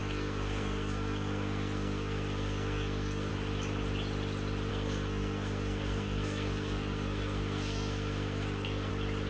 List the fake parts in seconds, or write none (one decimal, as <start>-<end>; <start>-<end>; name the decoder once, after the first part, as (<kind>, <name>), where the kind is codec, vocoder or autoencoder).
0.0-3.3 (codec, SNAC); 4.7-8.9